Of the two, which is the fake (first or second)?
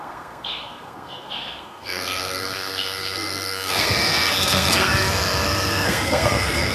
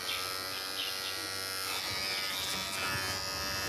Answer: first